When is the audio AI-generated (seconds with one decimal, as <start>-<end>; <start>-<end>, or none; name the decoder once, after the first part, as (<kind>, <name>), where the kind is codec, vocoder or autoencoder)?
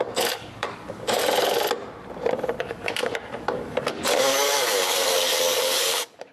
0.0-1.2 (codec, DAC); 2.6-6.3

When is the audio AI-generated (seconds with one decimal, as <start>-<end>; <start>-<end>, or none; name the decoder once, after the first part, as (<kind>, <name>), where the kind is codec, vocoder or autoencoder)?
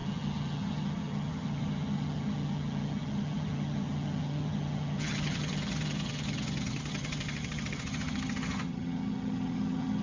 0.0-10.0 (vocoder, HiFi-GAN)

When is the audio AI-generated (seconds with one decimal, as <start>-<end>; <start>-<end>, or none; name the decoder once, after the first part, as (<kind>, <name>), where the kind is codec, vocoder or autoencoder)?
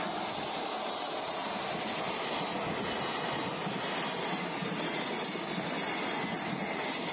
none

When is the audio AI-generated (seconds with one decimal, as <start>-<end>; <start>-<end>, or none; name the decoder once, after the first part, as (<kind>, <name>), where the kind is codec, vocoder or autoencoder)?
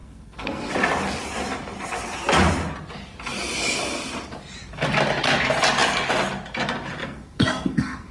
0.0-0.7 (codec, SNAC); 7.0-8.1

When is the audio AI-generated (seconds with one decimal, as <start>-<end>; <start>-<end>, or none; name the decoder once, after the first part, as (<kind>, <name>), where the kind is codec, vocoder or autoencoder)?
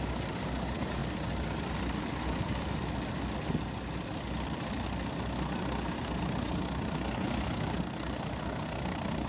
none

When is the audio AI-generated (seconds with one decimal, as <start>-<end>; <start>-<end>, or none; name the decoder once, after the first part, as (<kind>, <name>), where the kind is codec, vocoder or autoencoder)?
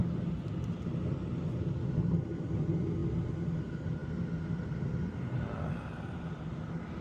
none